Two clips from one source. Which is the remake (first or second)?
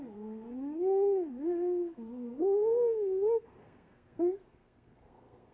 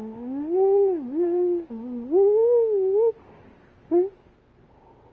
first